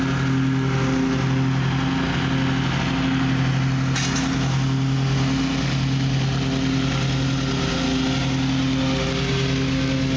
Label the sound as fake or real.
real